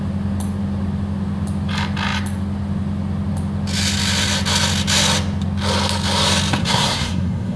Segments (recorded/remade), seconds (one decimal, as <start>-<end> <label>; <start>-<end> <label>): 0.0-6.6 recorded; 6.6-7.6 remade

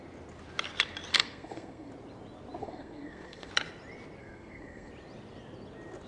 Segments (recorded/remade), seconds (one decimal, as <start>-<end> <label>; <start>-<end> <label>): 0.0-1.1 recorded; 1.1-1.9 remade; 1.9-2.6 recorded; 2.6-3.5 remade; 3.5-4.2 recorded; 4.2-4.9 remade; 4.9-6.1 recorded

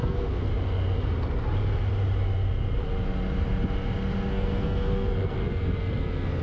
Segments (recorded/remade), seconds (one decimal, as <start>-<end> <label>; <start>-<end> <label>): 0.0-0.5 remade; 0.5-4.3 recorded; 4.3-6.4 remade